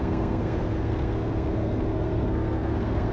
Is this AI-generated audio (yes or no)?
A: yes